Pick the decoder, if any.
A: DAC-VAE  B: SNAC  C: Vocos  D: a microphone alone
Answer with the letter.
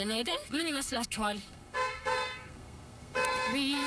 B